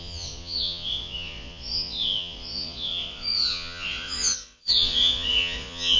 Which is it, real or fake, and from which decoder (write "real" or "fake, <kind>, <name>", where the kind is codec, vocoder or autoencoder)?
fake, vocoder, Vocos